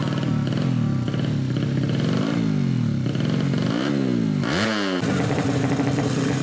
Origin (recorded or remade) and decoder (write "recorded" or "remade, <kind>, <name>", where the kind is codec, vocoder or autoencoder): recorded